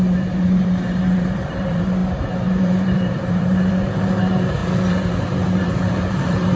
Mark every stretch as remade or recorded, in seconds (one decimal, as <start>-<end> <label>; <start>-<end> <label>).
0.0-6.6 remade